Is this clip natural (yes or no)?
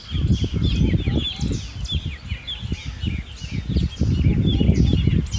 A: yes